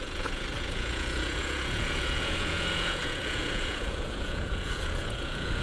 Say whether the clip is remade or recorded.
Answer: remade